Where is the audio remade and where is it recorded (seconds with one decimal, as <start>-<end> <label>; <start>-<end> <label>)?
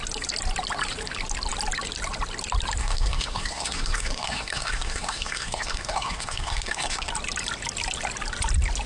0.0-2.8 recorded; 2.8-7.1 remade; 7.1-8.9 recorded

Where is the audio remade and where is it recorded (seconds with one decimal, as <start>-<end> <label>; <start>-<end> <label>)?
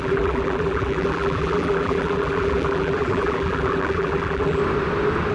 0.0-4.6 remade; 4.6-5.3 recorded